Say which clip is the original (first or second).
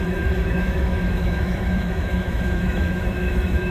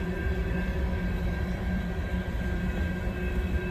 second